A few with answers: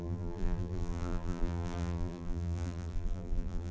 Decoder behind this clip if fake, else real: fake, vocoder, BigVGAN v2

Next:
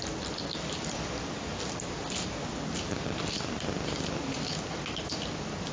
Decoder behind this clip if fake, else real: real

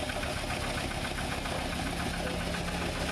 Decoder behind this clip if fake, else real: real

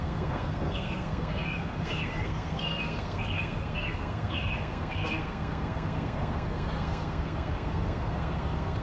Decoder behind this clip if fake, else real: fake, codec, SNAC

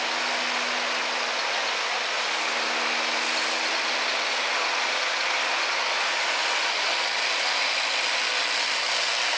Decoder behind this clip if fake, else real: real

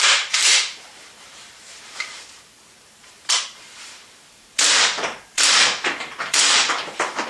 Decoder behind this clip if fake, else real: fake, vocoder, BigVGAN v2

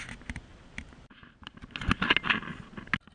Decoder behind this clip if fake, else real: real